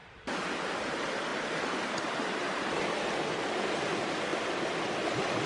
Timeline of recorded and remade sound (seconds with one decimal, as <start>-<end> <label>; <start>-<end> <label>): 0.0-0.9 remade; 0.9-1.3 recorded; 1.3-2.8 remade; 2.8-4.3 recorded; 4.3-4.9 remade; 4.9-5.5 recorded